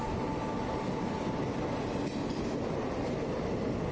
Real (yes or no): yes